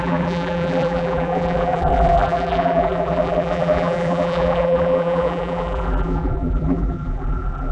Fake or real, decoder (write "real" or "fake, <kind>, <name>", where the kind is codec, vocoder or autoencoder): fake, vocoder, BigVGAN v2